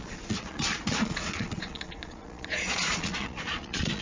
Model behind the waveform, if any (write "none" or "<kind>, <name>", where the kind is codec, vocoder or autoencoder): vocoder, Vocos